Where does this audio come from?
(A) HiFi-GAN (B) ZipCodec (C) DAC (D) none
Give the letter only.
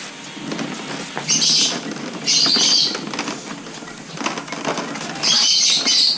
D